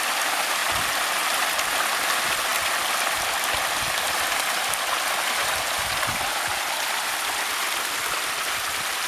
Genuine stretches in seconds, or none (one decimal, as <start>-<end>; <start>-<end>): 0.6-1.5